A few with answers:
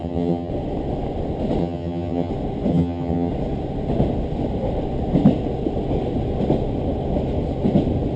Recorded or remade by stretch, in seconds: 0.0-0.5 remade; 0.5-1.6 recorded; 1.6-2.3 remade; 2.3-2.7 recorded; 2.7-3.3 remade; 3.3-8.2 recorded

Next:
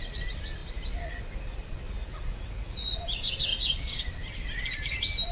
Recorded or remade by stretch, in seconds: 0.0-2.0 recorded; 2.0-3.0 remade; 3.0-3.5 recorded; 3.5-4.1 remade; 4.1-5.3 recorded

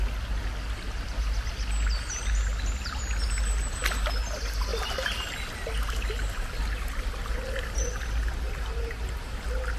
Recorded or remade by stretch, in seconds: 0.0-9.8 recorded